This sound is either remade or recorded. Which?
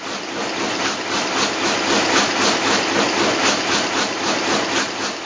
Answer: recorded